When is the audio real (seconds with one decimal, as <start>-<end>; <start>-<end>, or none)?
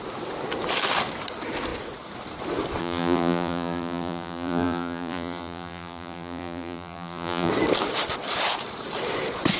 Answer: 0.0-2.8; 7.5-9.6